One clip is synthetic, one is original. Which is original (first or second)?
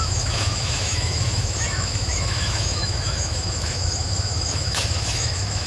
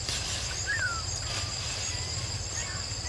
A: second